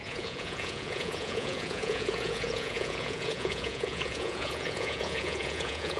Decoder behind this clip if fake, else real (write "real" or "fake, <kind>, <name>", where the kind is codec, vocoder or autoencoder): fake, vocoder, Vocos